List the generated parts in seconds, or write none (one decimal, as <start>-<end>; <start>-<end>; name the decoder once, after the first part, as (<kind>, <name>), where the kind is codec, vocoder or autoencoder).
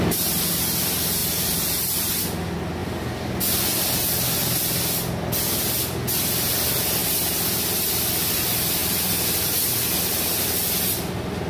2.8-3.8 (vocoder, BigVGAN v2); 8.8-11.1